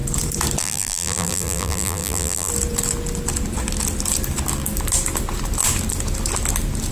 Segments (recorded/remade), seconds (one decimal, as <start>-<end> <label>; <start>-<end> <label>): 0.0-0.6 recorded; 0.6-2.5 remade; 2.5-6.9 recorded